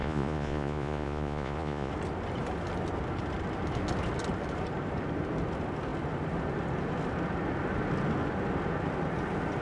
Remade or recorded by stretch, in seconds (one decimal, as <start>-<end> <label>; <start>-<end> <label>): 0.0-1.9 remade; 1.9-9.6 recorded